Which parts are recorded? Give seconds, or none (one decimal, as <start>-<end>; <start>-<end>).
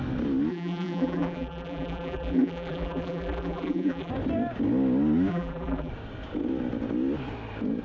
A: 0.0-0.5; 4.1-5.3; 5.9-7.8